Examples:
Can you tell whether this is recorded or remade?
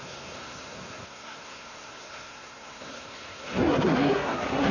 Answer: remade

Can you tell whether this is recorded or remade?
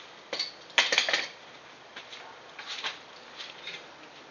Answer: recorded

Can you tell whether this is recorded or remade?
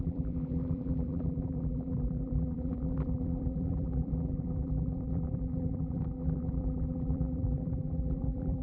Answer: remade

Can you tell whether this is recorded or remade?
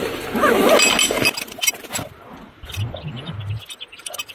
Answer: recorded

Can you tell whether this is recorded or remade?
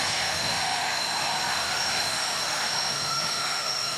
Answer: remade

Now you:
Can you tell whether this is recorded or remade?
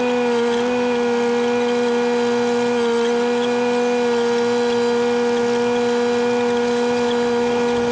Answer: recorded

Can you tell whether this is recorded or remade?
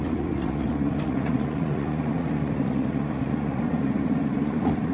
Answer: remade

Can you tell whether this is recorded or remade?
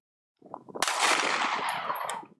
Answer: recorded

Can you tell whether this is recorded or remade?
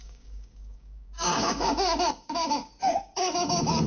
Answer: remade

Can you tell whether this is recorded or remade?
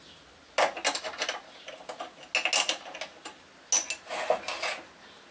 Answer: recorded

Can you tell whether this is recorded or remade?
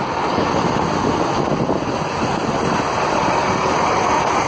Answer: recorded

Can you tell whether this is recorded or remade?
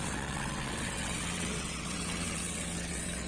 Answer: remade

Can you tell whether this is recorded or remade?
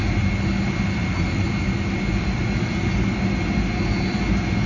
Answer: recorded